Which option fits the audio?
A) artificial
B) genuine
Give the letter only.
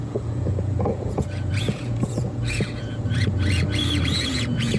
A